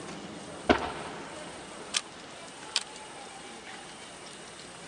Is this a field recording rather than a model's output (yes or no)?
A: yes